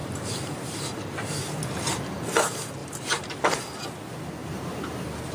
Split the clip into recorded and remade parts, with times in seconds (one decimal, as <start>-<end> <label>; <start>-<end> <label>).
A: 0.0-1.6 remade; 1.6-2.8 recorded; 2.8-3.4 remade; 3.4-4.4 recorded; 4.4-5.3 remade

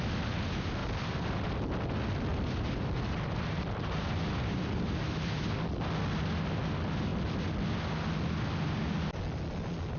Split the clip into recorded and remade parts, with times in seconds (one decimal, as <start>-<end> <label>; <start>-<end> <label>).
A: 0.0-0.8 recorded; 0.8-1.5 remade; 1.5-2.3 recorded; 2.3-5.7 remade; 5.7-10.0 recorded

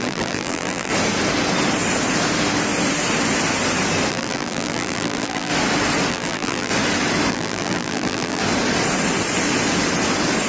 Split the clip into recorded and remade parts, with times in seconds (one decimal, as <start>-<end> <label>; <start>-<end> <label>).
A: 0.0-0.9 remade; 0.9-4.1 recorded; 4.1-5.5 remade; 5.5-6.1 recorded; 6.1-6.7 remade; 6.7-7.3 recorded; 7.3-8.4 remade; 8.4-10.5 recorded

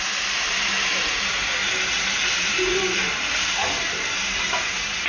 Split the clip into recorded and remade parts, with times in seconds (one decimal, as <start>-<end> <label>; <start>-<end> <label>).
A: 0.0-5.1 remade

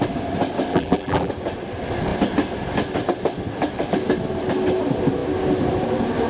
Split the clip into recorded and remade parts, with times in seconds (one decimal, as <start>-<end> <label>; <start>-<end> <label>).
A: 0.0-0.7 recorded; 0.7-1.3 remade; 1.3-6.3 recorded

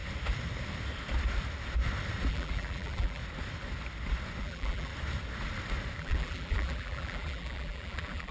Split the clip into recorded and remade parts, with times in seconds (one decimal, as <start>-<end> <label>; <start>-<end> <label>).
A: 0.0-2.3 recorded; 2.3-3.2 remade; 3.2-4.4 recorded; 4.4-4.9 remade; 4.9-6.0 recorded; 6.0-8.3 remade